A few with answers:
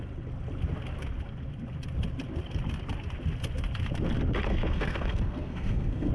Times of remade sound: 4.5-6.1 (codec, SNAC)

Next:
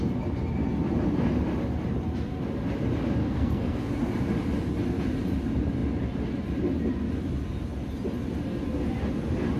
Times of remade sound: 3.2-3.9 (codec, SNAC)

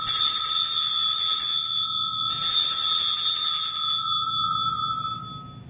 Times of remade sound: none

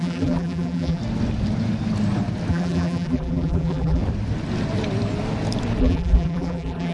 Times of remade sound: 0.0-1.0 (vocoder, BigVGAN v2); 2.5-4.0; 5.8-6.9

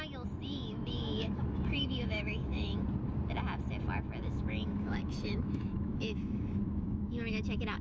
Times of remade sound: 0.4-2.8 (autoencoder, DAC-VAE); 4.2-7.8

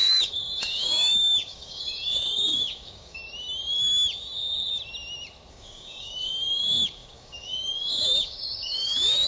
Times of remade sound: 0.0-3.2 (codec, DAC); 5.5-9.3